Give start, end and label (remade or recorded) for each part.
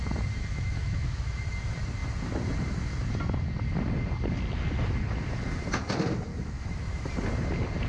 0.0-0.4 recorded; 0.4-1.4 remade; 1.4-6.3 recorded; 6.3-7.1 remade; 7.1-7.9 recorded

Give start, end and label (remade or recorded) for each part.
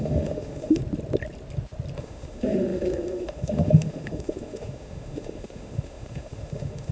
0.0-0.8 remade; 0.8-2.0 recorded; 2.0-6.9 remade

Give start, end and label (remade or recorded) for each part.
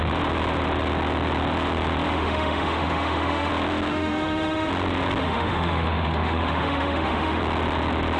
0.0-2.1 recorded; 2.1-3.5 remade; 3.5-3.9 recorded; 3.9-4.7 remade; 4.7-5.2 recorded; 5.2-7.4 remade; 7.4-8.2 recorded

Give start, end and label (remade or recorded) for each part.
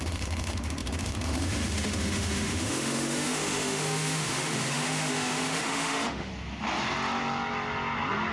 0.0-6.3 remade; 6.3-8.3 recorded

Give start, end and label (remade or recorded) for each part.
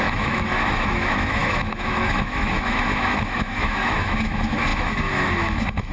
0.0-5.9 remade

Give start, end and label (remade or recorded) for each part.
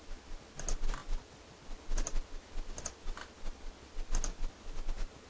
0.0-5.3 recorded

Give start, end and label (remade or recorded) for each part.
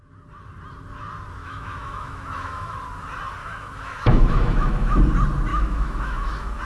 0.0-1.4 recorded; 1.4-2.8 remade; 2.8-3.4 recorded; 3.4-5.0 remade; 5.0-5.5 recorded; 5.5-6.6 remade